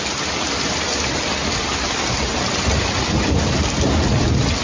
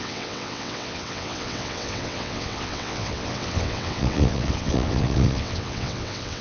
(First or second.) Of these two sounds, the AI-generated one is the second